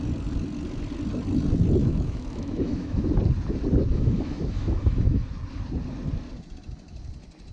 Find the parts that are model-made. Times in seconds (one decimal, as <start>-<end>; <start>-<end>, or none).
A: 1.8-3.1; 3.9-5.3

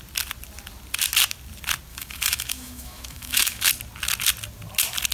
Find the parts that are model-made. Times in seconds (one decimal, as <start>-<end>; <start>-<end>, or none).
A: 1.9-3.7

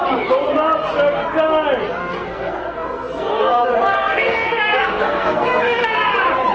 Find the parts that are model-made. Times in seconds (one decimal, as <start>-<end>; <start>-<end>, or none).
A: 2.0-5.9